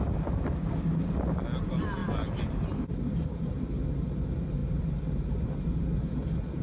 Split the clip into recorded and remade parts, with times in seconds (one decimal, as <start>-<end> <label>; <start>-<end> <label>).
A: 0.0-6.6 recorded